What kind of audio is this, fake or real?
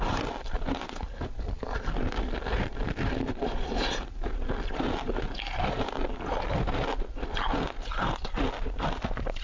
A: real